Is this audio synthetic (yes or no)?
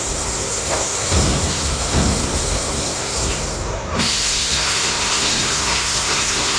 yes